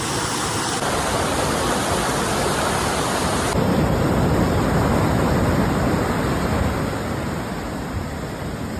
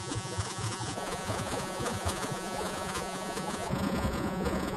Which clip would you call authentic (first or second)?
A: first